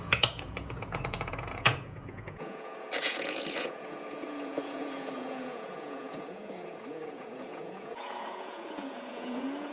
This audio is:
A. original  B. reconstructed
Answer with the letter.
B